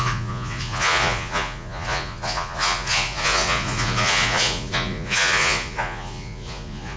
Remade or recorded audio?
remade